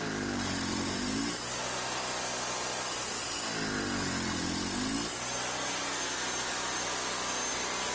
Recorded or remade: recorded